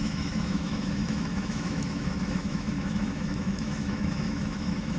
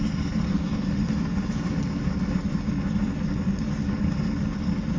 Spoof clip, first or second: first